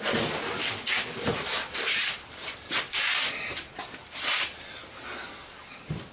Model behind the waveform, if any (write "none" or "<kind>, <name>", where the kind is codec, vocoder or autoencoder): none